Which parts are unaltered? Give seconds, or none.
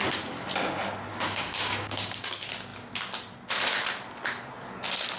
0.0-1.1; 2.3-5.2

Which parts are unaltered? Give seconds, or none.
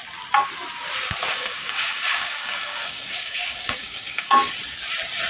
0.0-1.3; 4.5-5.3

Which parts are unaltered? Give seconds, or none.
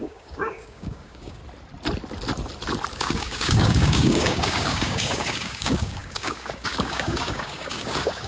1.4-2.9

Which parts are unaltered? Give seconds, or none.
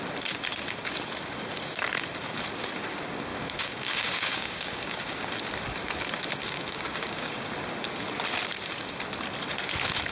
0.0-3.3; 5.3-6.4; 7.5-10.1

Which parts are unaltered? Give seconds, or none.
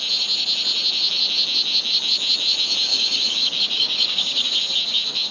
0.0-2.9; 4.5-5.3